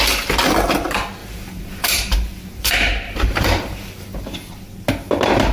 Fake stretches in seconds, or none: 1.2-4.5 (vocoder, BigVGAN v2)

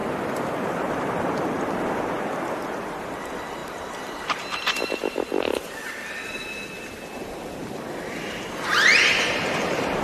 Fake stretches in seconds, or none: 2.9-10.0 (vocoder, BigVGAN v2)

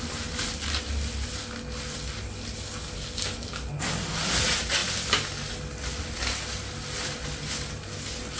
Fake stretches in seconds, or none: none

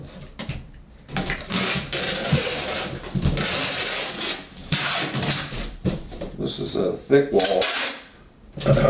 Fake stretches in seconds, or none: 4.6-7.8 (vocoder, BigVGAN v2)

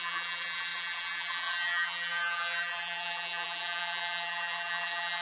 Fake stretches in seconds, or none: 0.0-5.2 (vocoder, BigVGAN v2)

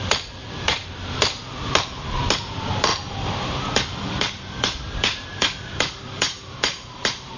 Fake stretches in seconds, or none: 0.4-0.9 (vocoder, BigVGAN v2); 2.9-7.4